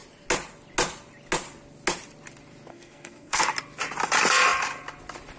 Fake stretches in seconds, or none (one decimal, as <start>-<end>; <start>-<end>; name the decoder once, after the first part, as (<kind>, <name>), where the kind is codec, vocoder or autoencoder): 2.7-3.4 (codec, SNAC)